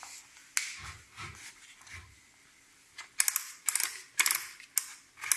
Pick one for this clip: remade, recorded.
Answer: recorded